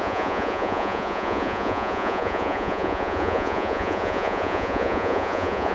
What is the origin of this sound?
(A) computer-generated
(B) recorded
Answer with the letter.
A